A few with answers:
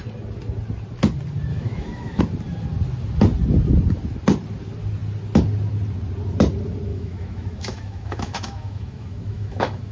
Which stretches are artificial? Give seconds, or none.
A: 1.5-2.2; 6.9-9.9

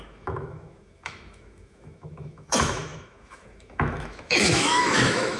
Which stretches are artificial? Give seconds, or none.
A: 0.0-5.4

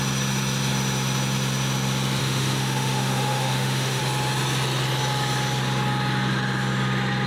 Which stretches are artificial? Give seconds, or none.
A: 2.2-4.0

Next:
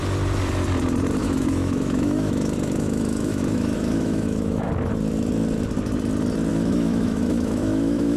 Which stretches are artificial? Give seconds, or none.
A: 1.2-4.7; 6.5-8.2

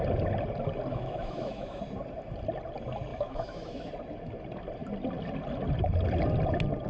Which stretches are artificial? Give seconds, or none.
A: 0.9-1.8; 3.1-3.9